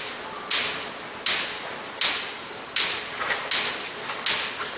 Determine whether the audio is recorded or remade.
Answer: recorded